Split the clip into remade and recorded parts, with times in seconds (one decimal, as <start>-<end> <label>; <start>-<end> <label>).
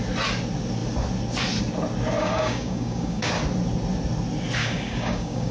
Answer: 0.0-2.2 recorded; 2.2-3.3 remade; 3.3-4.6 recorded; 4.6-5.5 remade